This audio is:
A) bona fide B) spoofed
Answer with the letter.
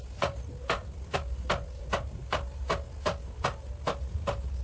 A